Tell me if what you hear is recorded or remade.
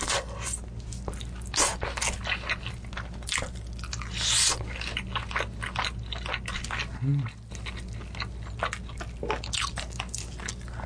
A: recorded